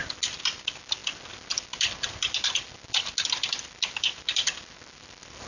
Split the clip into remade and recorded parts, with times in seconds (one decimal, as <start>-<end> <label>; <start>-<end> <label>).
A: 0.0-5.5 recorded